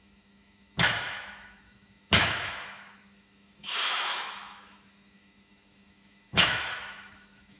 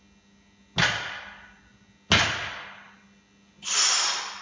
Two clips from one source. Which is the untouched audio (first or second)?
second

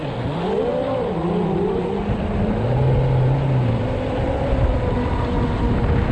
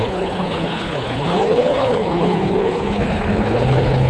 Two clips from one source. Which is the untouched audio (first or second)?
first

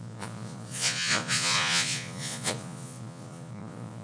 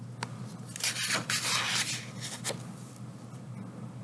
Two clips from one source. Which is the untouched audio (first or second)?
second